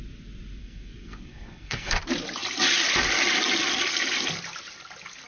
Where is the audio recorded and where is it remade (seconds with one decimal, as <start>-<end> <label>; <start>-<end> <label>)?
0.0-0.6 recorded; 0.6-2.0 remade; 2.0-5.3 recorded